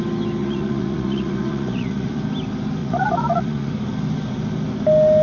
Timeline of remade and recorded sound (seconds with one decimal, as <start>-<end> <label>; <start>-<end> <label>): 0.0-0.4 recorded; 0.4-2.2 remade; 2.2-2.8 recorded; 2.8-3.7 remade; 3.7-5.2 recorded